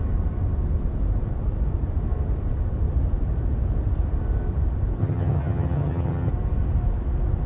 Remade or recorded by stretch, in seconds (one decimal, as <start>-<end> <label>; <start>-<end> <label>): 0.0-5.0 recorded; 5.0-6.3 remade; 6.3-7.5 recorded